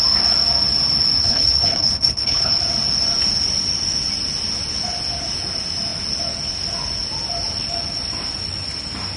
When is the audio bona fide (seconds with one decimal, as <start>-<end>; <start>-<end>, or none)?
0.0-1.2; 2.6-9.2

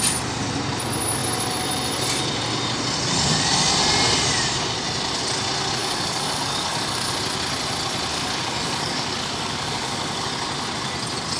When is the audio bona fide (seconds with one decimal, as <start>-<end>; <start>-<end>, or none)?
0.0-5.8; 7.1-8.1; 10.3-11.4

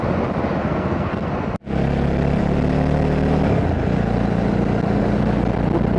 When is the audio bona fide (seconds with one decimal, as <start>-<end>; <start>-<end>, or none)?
0.0-0.6; 1.3-6.0

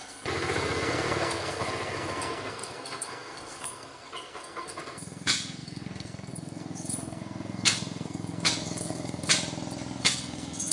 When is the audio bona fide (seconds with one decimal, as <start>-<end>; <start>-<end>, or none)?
9.3-10.0

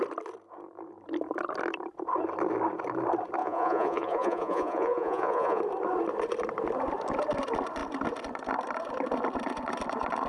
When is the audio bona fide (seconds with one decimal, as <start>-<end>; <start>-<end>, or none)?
0.0-3.4; 5.6-10.3

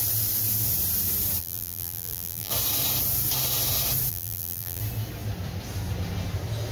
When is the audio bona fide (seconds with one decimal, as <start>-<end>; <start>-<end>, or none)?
0.0-1.4; 2.5-4.1; 4.8-6.7

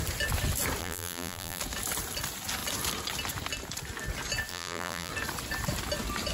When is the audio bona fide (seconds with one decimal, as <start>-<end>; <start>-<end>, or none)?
0.0-0.8; 1.6-4.5; 5.1-6.3

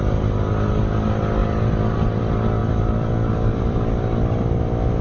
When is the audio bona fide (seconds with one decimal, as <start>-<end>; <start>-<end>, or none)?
0.0-2.6